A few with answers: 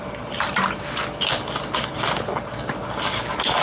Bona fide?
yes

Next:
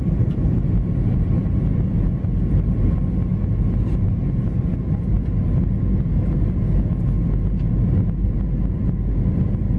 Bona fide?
yes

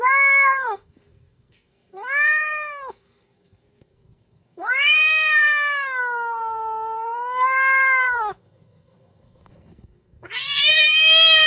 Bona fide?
no